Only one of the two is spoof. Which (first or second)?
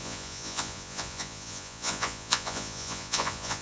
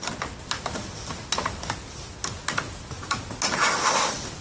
first